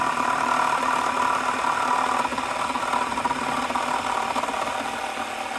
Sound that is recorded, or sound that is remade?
recorded